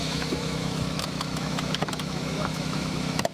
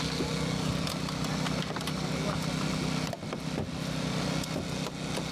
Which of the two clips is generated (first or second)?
first